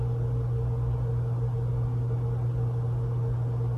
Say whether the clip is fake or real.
real